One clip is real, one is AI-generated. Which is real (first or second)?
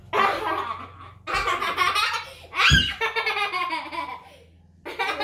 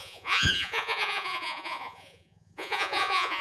first